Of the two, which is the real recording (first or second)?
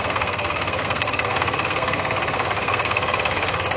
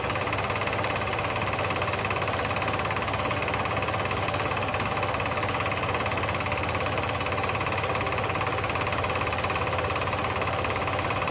second